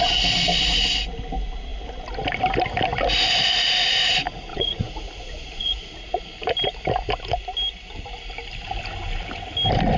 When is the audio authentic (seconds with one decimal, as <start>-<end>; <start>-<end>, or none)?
0.0-4.5; 6.2-10.0